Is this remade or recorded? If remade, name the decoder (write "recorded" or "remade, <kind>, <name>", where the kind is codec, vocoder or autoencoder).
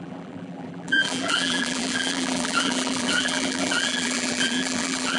remade, vocoder, BigVGAN v2